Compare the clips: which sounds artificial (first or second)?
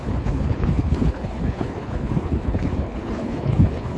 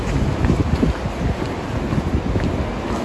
first